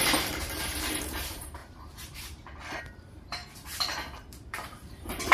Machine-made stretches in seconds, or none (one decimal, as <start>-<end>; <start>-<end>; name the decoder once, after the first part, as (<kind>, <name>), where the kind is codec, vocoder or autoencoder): 0.0-3.4 (vocoder, BigVGAN v2); 4.5-5.3